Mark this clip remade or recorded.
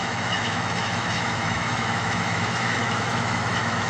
remade